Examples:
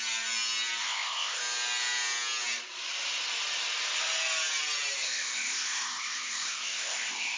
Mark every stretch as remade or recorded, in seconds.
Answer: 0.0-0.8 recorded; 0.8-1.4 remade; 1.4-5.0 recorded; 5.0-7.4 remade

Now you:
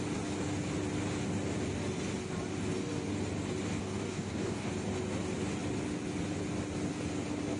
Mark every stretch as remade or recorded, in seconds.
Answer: 0.0-3.8 recorded; 3.8-4.7 remade; 4.7-7.6 recorded